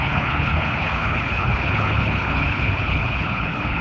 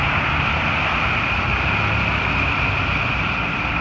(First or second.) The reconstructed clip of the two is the first